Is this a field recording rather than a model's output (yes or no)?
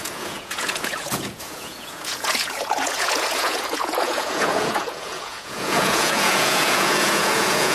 no